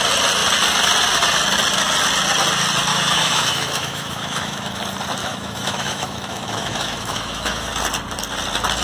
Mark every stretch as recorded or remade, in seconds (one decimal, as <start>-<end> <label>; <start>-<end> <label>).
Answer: 0.0-2.9 recorded; 2.9-4.8 remade; 4.8-5.2 recorded; 5.2-7.7 remade; 7.7-8.8 recorded